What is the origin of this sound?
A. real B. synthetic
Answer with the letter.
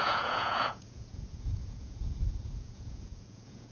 B